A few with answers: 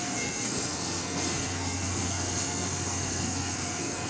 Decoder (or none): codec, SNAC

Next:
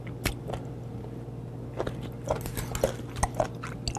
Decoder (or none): none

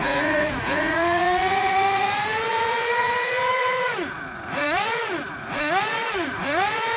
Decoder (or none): vocoder, Vocos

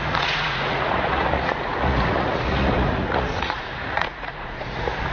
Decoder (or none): vocoder, Vocos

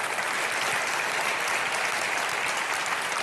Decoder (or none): none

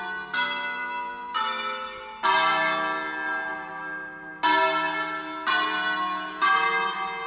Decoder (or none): none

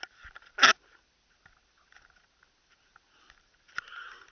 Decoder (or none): none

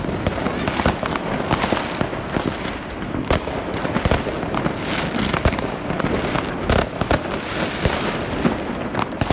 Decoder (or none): none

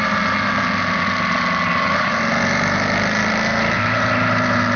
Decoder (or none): none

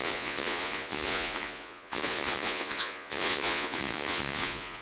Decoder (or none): vocoder, Vocos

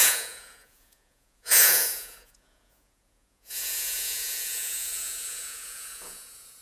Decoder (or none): vocoder, Vocos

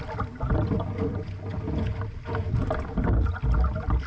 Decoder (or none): none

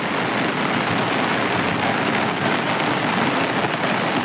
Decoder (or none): none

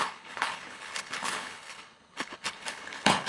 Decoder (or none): codec, HILCodec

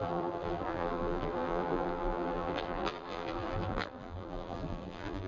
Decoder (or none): vocoder, BigVGAN v2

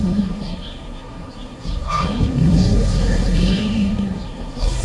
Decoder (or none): codec, SNAC